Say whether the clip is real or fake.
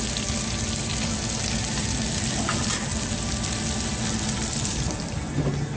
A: real